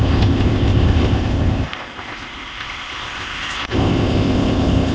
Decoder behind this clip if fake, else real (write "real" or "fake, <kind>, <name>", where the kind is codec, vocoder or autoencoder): fake, codec, ZipCodec